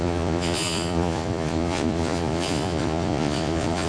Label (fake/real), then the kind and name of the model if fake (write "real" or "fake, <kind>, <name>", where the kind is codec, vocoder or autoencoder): fake, vocoder, Vocos